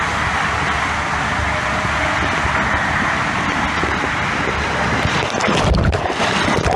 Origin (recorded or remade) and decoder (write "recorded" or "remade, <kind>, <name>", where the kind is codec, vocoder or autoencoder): recorded